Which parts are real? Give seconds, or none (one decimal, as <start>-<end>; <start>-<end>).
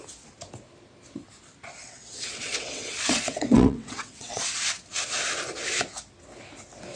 0.0-1.8; 4.4-7.0